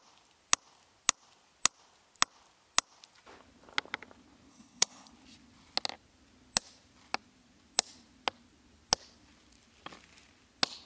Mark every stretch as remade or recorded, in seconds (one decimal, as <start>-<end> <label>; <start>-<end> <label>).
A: 0.0-4.5 recorded; 4.5-5.1 remade; 5.1-10.9 recorded